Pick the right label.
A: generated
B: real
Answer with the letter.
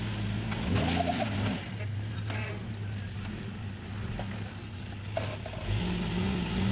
B